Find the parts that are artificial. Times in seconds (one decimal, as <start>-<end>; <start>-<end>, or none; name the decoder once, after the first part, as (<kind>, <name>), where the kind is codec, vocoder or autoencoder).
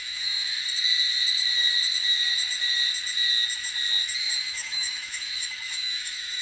0.0-0.6 (autoencoder, DAC-VAE); 4.4-6.4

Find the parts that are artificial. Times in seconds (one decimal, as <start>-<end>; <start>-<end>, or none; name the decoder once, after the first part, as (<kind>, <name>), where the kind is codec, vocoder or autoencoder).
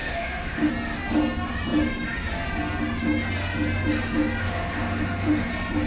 0.0-0.7 (autoencoder, DAC-VAE); 4.4-5.5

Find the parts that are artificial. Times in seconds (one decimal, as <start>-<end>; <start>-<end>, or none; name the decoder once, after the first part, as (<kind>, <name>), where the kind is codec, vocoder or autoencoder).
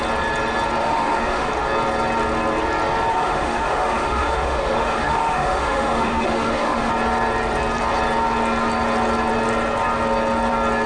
0.8-1.5 (autoencoder, DAC-VAE); 3.1-6.9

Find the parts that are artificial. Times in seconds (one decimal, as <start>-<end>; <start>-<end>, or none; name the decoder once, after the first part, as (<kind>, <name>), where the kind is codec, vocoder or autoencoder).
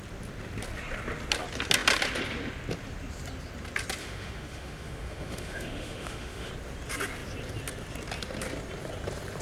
4.0-6.5 (autoencoder, DAC-VAE)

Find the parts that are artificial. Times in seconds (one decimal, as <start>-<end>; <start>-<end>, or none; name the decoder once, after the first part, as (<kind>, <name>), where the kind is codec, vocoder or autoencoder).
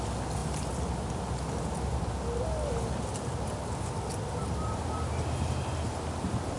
none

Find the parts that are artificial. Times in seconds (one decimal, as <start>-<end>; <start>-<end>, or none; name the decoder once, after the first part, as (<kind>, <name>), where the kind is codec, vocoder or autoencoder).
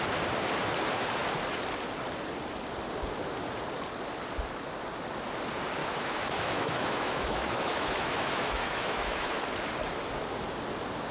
5.8-9.4 (autoencoder, DAC-VAE)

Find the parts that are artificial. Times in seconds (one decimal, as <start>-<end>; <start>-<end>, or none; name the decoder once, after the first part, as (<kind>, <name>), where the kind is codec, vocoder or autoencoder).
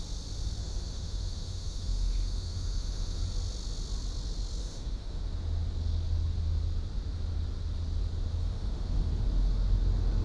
0.6-3.2 (autoencoder, DAC-VAE); 4.6-5.2; 8.4-9.1